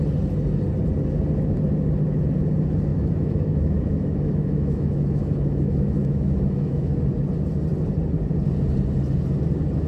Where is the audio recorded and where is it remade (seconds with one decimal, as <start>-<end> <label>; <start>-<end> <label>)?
0.0-2.9 recorded; 2.9-6.9 remade; 6.9-9.9 recorded